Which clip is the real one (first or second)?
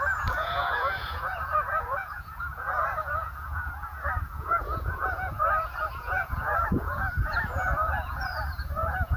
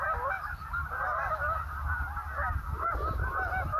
second